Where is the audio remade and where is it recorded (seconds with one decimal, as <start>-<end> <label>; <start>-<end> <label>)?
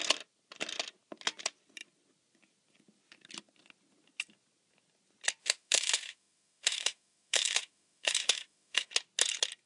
0.0-5.4 recorded; 5.4-8.9 remade; 8.9-9.7 recorded